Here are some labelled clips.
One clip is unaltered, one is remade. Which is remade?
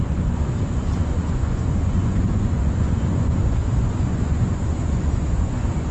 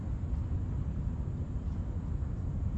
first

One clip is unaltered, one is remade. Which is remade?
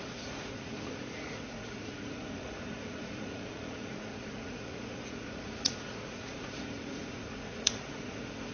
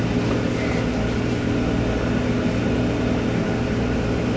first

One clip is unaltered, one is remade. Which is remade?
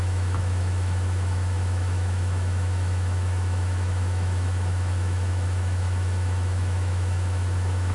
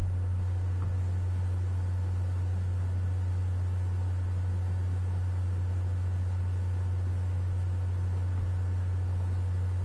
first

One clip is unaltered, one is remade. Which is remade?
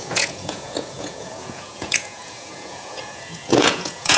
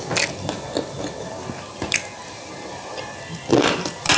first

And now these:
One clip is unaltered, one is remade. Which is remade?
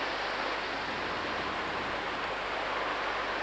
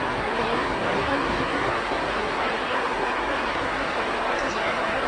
second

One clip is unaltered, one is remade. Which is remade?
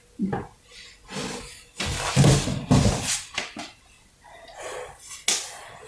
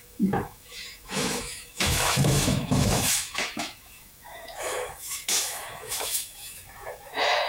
second